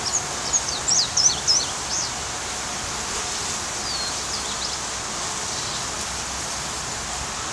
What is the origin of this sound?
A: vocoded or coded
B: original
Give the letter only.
B